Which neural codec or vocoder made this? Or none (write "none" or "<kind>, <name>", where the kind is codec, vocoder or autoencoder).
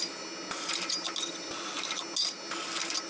none